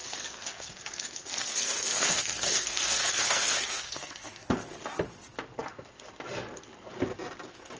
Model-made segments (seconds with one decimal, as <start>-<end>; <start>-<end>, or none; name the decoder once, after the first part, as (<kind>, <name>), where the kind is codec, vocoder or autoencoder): 0.0-4.7 (codec, SNAC)